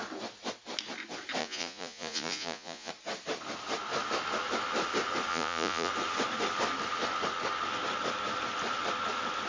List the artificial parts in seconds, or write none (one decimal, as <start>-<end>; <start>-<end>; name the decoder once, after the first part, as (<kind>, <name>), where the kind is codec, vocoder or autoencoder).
1.4-2.9 (vocoder, Vocos); 5.3-5.9